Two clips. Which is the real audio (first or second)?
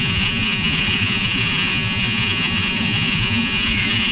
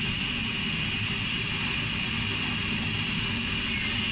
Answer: second